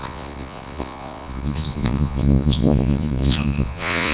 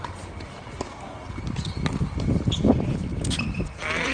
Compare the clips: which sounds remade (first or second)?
first